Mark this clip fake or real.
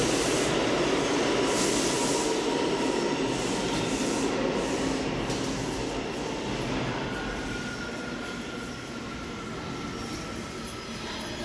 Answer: real